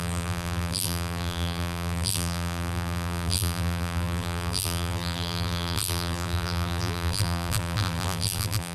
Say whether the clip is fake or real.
fake